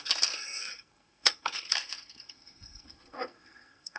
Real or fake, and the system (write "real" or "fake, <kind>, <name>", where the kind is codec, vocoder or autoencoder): fake, codec, SNAC